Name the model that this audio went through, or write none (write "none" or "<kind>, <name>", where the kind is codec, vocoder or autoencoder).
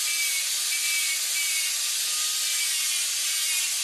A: none